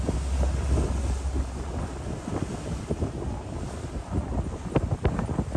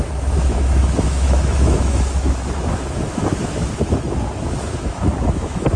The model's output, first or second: second